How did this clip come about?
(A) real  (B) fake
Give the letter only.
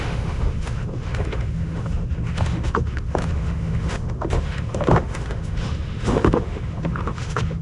B